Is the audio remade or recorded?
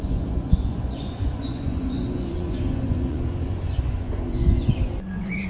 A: remade